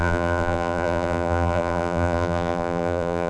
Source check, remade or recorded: remade